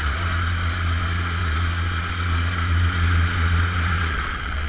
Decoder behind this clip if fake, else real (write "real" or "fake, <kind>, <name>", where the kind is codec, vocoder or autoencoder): fake, vocoder, Vocos